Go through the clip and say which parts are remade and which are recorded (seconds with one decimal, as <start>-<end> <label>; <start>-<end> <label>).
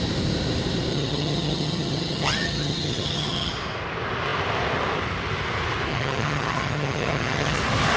0.0-0.9 recorded; 0.9-3.5 remade; 3.5-5.9 recorded; 5.9-7.6 remade; 7.6-8.0 recorded